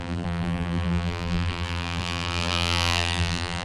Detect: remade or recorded remade